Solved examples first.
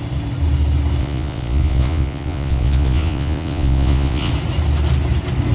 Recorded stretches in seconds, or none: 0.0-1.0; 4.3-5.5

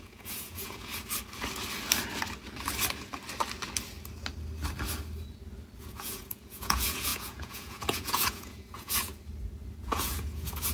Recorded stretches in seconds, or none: 0.9-5.8; 9.1-9.8